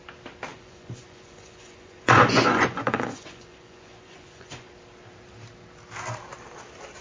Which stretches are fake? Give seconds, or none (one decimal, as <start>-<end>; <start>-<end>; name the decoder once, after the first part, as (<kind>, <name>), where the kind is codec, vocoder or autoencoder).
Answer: 0.5-4.7 (vocoder, Vocos)